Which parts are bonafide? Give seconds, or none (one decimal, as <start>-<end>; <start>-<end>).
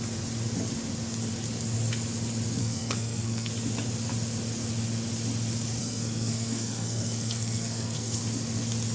0.0-2.6; 3.5-5.8; 8.2-8.9